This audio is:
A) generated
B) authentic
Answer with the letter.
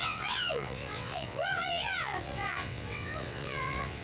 A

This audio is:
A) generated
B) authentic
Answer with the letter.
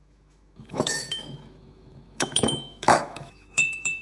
A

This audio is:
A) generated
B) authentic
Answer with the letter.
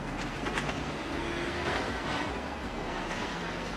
A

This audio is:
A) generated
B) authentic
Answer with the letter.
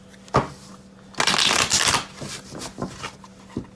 B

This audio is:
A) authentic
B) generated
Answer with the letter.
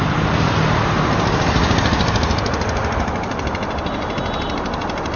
A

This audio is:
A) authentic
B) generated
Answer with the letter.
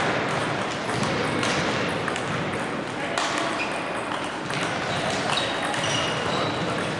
A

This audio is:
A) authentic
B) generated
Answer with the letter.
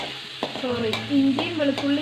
B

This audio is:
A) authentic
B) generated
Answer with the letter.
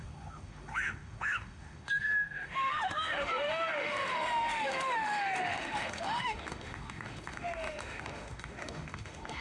B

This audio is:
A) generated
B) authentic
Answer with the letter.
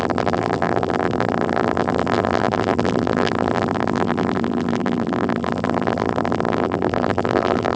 A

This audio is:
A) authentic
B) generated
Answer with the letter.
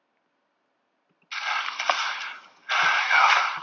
A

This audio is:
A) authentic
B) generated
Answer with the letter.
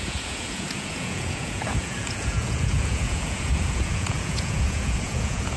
B